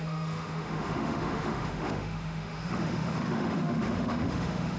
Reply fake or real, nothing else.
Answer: fake